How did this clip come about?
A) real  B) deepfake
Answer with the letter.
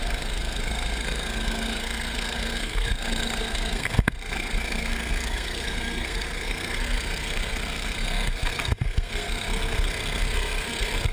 B